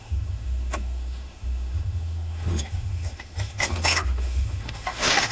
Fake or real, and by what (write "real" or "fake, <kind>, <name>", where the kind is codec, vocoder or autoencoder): fake, autoencoder, DAC-VAE